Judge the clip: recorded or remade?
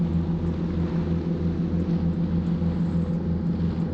recorded